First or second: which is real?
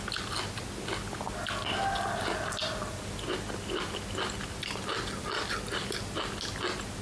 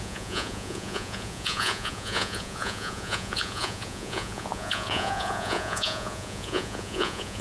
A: first